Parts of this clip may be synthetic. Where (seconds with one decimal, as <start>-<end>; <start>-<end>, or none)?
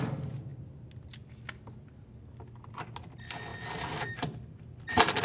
none